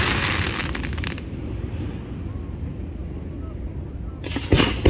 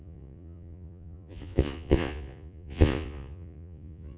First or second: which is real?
first